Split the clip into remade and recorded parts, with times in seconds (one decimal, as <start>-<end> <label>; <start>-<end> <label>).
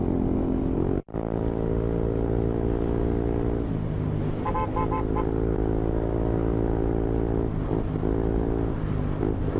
0.0-9.6 recorded